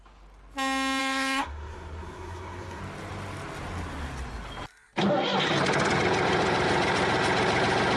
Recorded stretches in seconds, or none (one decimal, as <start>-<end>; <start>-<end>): 0.0-1.0; 2.8-8.0